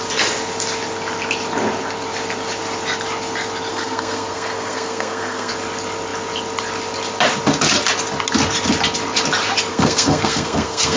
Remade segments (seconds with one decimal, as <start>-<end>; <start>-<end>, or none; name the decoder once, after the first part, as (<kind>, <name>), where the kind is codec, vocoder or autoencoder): 3.7-5.5 (codec, SNAC); 9.7-11.0